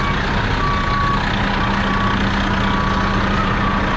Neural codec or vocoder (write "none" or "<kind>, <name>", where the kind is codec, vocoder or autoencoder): none